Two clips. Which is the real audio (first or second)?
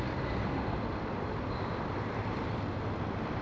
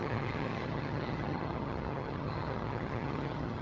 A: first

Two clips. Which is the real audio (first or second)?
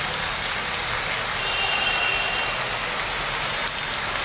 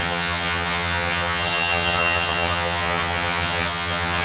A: first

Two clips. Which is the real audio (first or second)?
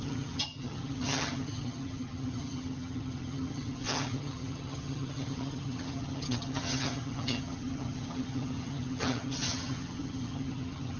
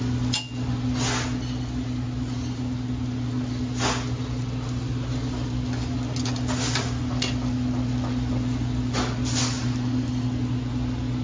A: second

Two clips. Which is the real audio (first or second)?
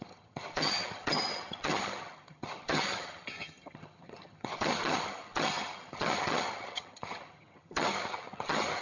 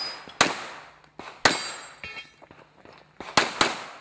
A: second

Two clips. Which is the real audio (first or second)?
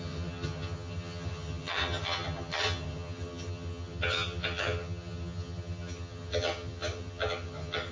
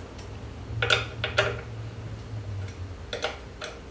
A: second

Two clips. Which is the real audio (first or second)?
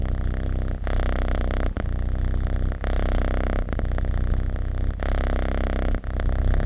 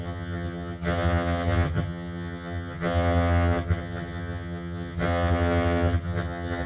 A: first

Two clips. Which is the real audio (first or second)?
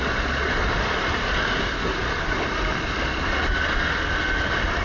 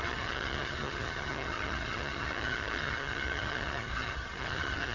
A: first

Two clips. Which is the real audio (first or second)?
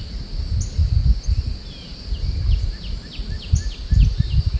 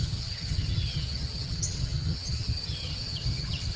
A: first